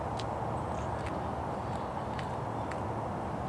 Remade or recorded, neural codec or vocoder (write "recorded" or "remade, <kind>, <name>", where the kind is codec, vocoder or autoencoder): recorded